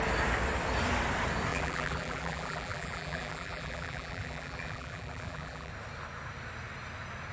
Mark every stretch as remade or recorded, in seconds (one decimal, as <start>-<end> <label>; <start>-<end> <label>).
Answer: 0.0-1.5 recorded; 1.5-5.7 remade; 5.7-7.3 recorded